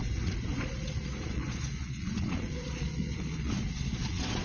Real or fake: fake